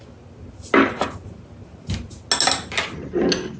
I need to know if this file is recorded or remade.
recorded